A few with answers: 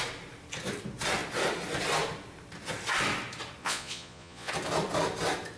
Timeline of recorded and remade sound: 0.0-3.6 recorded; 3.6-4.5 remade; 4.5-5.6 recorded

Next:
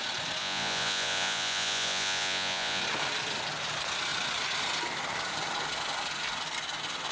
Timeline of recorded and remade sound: 0.0-0.4 recorded; 0.4-2.8 remade; 2.8-7.1 recorded

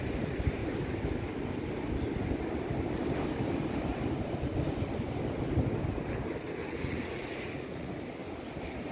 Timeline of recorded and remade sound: 0.0-6.6 recorded; 6.6-7.9 remade; 7.9-8.9 recorded

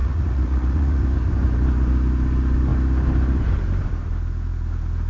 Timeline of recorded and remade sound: 0.0-1.0 remade; 1.0-5.1 recorded

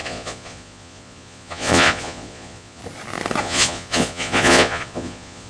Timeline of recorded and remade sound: 0.0-2.8 remade; 2.8-3.4 recorded; 3.4-5.5 remade

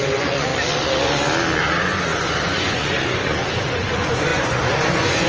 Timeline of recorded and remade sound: 0.0-0.5 remade; 0.5-1.6 recorded; 1.6-5.3 remade

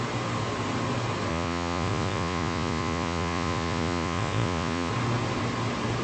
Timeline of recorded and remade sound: 0.0-1.3 recorded; 1.3-4.9 remade; 4.9-6.0 recorded